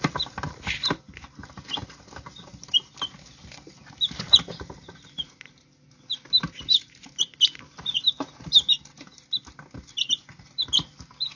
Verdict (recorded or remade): recorded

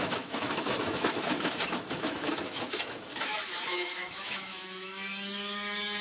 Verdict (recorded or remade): remade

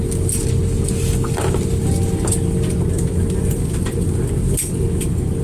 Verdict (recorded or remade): recorded